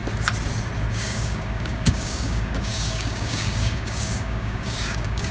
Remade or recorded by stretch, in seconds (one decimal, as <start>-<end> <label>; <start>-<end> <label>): 0.0-0.9 recorded; 0.9-5.3 remade